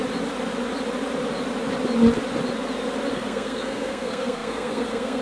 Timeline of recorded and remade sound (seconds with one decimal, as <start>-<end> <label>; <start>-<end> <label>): 0.0-3.1 recorded; 3.1-5.2 remade